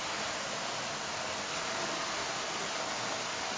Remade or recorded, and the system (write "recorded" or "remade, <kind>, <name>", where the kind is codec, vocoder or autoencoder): recorded